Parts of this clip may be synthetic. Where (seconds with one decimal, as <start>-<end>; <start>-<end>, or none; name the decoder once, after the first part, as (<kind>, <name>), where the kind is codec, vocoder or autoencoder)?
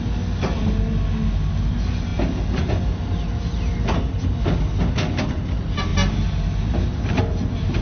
none